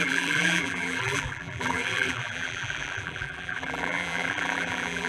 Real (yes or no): no